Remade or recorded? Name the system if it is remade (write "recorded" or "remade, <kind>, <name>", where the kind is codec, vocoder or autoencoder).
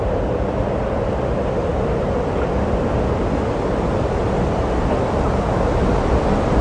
recorded